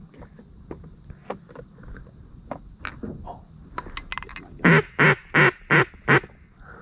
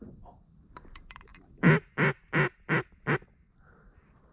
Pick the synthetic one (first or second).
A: second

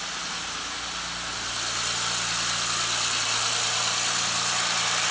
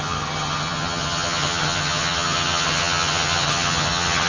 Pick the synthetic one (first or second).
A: second